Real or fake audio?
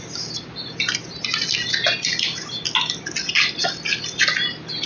real